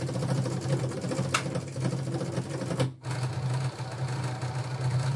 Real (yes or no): yes